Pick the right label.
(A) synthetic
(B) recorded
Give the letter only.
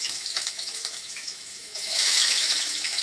A